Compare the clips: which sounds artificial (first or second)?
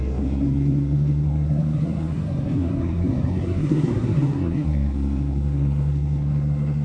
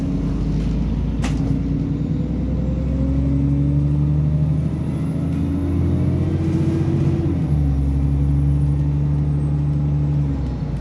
first